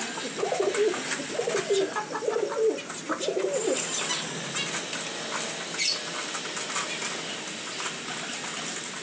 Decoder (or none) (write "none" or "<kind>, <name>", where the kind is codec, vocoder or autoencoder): none